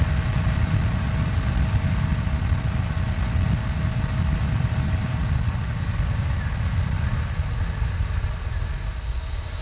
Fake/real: real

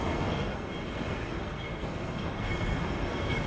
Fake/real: fake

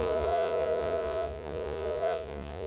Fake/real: fake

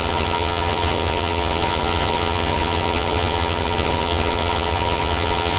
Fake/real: fake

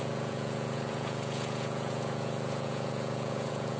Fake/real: fake